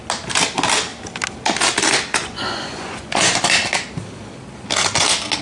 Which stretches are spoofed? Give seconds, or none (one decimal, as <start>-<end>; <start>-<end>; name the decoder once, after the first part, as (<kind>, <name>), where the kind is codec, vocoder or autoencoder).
2.2-3.4 (vocoder, Vocos)